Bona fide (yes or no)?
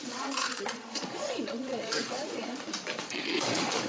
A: no